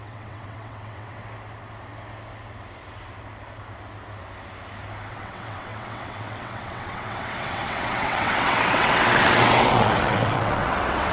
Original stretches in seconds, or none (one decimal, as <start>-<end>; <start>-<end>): 1.2-5.1